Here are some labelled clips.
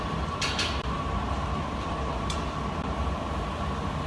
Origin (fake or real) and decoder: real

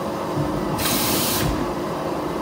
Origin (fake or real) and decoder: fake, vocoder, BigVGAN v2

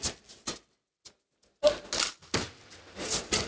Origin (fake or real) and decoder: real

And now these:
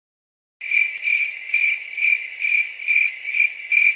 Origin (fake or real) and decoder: real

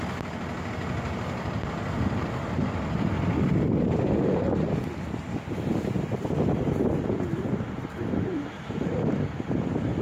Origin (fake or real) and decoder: real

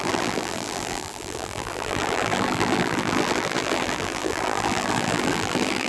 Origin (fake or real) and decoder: fake, vocoder, BigVGAN v2